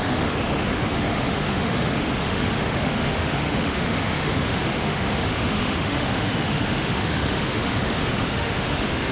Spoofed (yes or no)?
yes